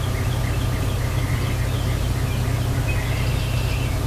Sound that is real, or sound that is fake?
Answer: real